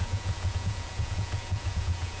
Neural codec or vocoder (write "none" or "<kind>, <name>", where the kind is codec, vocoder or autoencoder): vocoder, Vocos